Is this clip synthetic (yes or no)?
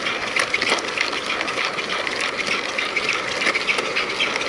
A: no